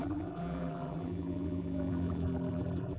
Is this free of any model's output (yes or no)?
no